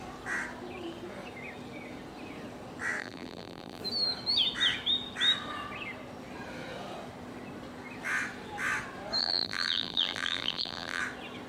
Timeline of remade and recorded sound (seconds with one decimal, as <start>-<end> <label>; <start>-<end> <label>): 0.0-3.0 recorded; 3.0-3.8 remade; 3.8-9.2 recorded; 9.2-11.0 remade; 11.0-11.5 recorded